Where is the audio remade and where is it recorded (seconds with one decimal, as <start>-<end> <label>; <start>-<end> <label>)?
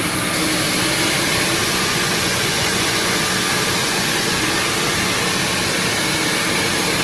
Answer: 0.0-1.6 recorded; 1.6-3.2 remade; 3.2-3.8 recorded; 3.8-4.5 remade; 4.5-7.0 recorded